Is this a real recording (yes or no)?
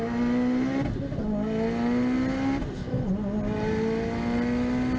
yes